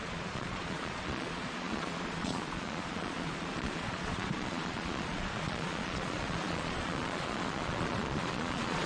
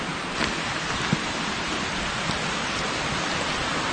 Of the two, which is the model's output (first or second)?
first